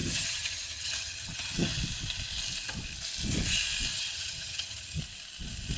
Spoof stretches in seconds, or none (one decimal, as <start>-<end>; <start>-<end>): 0.0-1.8; 3.9-5.0